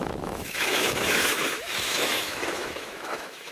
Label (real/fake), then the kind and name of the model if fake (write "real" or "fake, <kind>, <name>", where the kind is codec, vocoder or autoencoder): fake, autoencoder, DAC-VAE